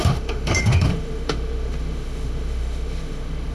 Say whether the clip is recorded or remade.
remade